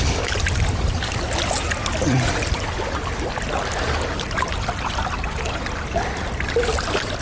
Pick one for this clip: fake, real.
real